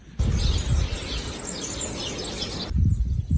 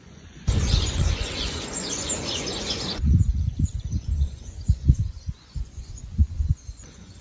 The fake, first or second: second